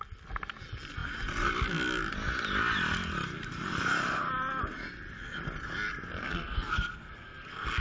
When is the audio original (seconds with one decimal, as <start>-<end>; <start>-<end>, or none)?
0.0-6.2